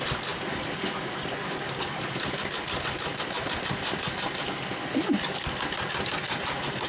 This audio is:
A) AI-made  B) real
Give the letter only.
B